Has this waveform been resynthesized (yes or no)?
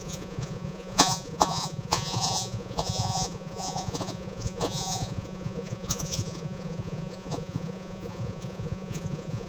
yes